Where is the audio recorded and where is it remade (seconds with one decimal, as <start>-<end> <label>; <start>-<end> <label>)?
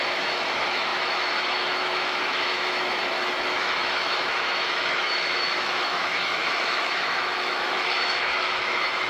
0.0-9.1 remade